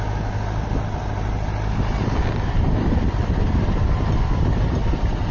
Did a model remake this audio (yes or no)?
no